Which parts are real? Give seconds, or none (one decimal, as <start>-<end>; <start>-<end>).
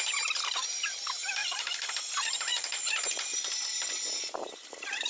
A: 0.0-1.4; 2.1-2.5; 3.4-5.1